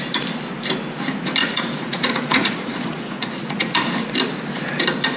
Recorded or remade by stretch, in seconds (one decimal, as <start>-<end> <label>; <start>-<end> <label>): 0.0-1.4 recorded; 1.4-3.7 remade; 3.7-5.2 recorded